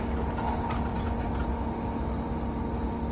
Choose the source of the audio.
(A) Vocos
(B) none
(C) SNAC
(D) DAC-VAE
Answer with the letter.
B